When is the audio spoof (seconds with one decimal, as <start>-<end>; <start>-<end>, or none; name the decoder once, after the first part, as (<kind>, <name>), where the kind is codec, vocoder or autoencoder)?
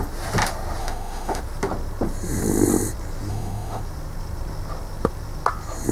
0.8-1.4 (autoencoder, DAC-VAE); 3.3-3.8